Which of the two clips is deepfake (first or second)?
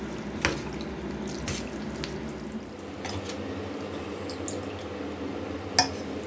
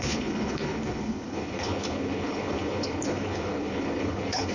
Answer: second